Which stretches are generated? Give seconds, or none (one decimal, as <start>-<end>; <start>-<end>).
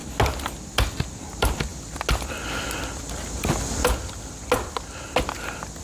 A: none